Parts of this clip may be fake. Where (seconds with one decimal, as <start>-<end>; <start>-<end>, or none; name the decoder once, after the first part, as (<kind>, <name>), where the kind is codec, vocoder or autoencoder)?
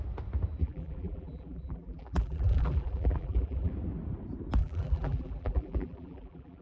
0.6-3.7 (vocoder, BigVGAN v2); 4.6-6.6